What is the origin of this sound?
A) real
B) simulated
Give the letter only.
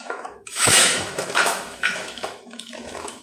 B